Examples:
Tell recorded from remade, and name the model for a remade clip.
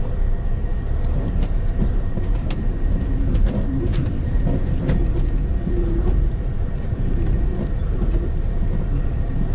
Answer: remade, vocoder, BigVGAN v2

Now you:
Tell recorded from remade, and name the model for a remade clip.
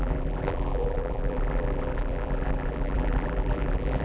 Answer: remade, vocoder, BigVGAN v2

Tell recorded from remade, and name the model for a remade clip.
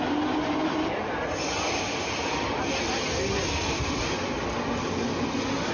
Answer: recorded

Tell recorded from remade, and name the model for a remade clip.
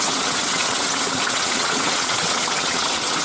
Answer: remade, vocoder, WaveNeXt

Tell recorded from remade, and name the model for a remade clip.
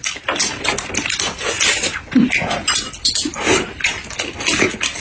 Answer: recorded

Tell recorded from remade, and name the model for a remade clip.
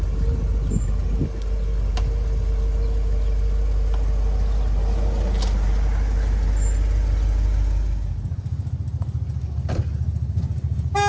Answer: recorded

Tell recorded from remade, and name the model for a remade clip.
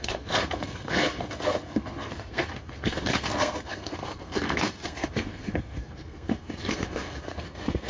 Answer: remade, codec, SNAC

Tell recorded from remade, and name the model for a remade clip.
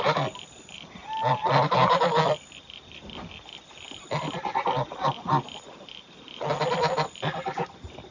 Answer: recorded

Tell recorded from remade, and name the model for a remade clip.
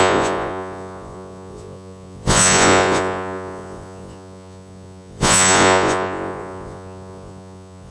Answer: remade, vocoder, Vocos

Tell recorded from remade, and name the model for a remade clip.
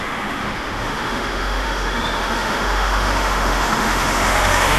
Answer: remade, autoencoder, DAC-VAE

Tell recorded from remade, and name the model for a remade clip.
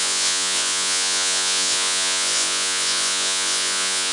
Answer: remade, vocoder, Vocos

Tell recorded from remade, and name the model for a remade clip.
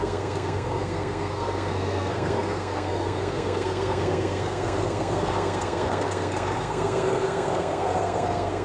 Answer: remade, codec, SNAC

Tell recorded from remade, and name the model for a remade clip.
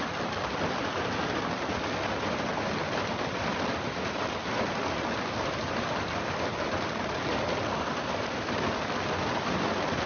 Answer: recorded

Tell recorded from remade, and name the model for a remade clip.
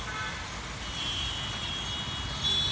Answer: recorded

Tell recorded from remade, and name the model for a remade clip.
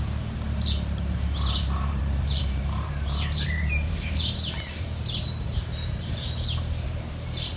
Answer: remade, vocoder, BigVGAN v2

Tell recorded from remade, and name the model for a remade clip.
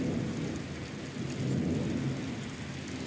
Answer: recorded